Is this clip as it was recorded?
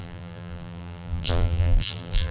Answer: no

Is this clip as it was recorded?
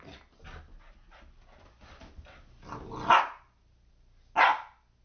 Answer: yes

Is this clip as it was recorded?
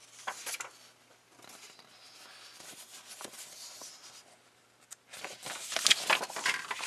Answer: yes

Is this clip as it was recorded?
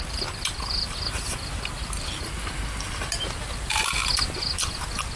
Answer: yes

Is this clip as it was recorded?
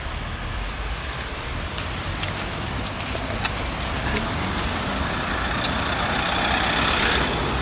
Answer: no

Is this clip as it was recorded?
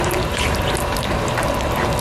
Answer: yes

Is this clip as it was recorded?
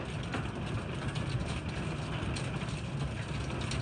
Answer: no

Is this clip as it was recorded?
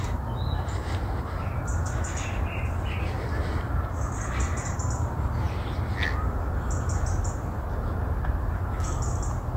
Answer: yes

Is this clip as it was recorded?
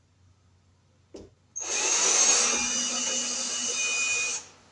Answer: yes